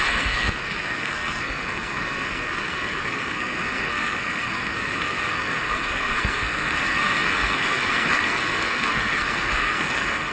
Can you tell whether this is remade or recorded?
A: remade